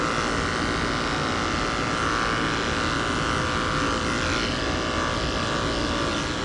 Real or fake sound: real